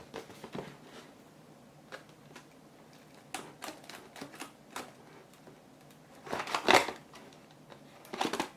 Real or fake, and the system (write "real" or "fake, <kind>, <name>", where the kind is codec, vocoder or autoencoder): real